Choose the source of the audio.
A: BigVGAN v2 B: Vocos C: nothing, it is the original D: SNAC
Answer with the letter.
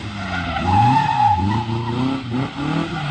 C